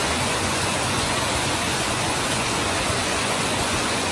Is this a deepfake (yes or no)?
yes